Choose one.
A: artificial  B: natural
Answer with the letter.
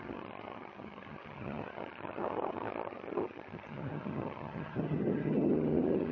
A